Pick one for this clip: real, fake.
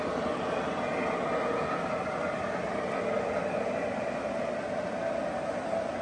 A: real